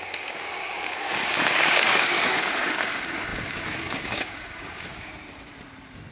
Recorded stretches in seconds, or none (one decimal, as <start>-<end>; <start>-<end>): 5.1-6.1